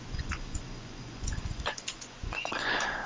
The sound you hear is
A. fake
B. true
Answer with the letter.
A